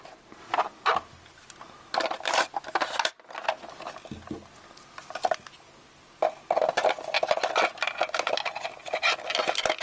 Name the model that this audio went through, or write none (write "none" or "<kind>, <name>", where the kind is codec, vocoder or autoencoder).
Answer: none